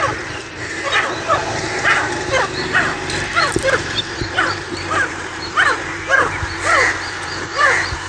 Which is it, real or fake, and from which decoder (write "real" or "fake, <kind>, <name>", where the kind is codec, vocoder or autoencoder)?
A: fake, vocoder, BigVGAN v2